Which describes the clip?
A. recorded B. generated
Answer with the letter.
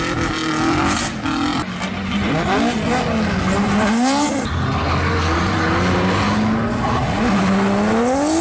A